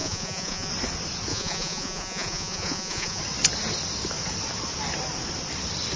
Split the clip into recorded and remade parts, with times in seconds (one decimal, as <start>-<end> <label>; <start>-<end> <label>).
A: 0.0-0.7 remade; 0.7-1.3 recorded; 1.3-3.2 remade; 3.2-6.0 recorded